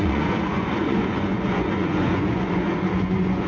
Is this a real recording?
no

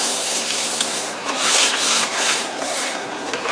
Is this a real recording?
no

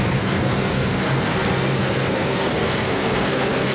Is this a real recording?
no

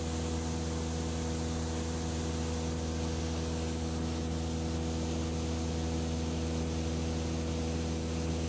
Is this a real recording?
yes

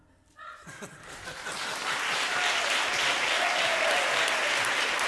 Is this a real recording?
yes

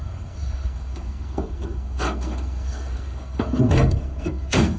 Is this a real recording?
no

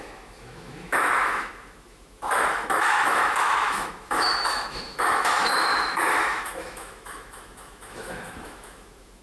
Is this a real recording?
no